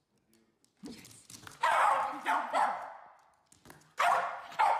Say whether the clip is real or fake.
real